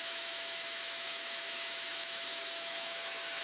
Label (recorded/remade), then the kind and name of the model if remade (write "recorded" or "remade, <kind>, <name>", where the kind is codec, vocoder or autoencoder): remade, autoencoder, DAC-VAE